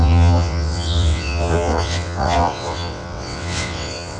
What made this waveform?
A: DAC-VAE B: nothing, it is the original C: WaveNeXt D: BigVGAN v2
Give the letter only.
C